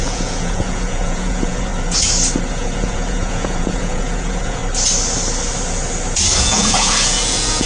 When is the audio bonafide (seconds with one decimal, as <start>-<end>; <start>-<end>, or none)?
1.7-2.5; 4.6-6.4